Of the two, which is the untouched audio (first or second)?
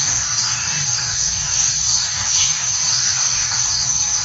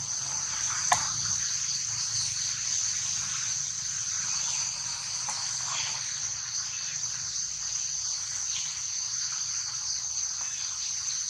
second